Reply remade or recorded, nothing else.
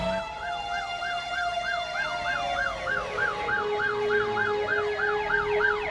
recorded